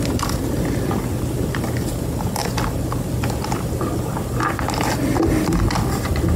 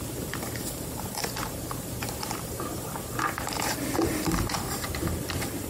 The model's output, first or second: second